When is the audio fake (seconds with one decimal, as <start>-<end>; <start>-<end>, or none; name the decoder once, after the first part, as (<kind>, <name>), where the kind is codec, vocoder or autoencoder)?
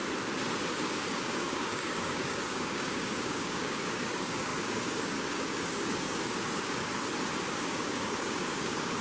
0.7-6.9 (codec, DAC); 7.6-9.0